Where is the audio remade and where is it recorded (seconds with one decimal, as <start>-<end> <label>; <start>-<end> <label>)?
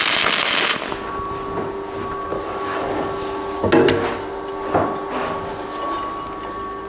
0.0-2.3 recorded; 2.3-2.9 remade; 2.9-6.9 recorded